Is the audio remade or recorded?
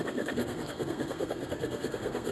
remade